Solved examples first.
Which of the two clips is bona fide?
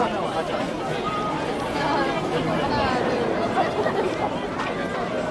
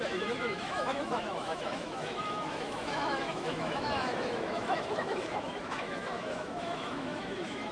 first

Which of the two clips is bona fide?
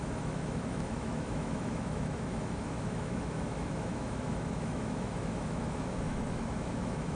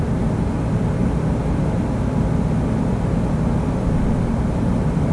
second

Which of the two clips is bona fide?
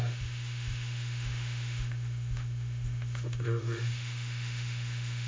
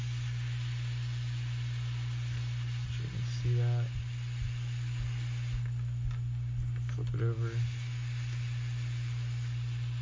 second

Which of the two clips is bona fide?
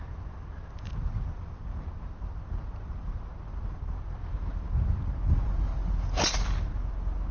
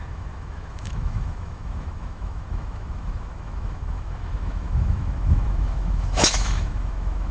first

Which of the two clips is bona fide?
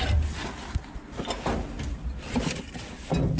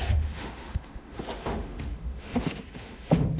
first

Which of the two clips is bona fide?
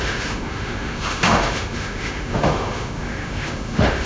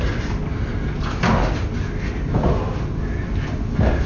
second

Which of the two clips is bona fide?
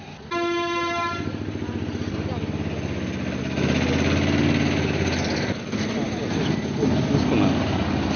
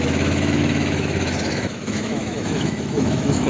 first